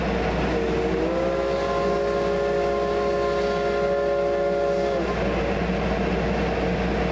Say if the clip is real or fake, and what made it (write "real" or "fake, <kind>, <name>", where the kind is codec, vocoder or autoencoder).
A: real